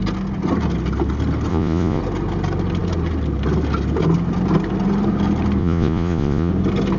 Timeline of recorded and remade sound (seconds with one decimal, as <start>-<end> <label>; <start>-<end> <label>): 0.0-1.5 recorded; 1.5-2.0 remade; 2.0-5.6 recorded; 5.6-6.5 remade; 6.5-7.0 recorded